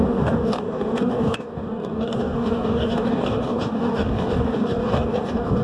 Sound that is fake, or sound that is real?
fake